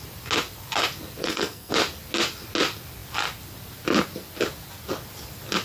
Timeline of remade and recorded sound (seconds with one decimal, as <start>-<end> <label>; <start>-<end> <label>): 0.0-1.2 recorded; 1.2-1.7 remade; 1.7-5.6 recorded